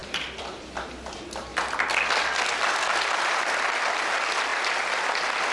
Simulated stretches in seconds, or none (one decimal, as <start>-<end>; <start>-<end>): 0.0-0.8; 4.5-5.5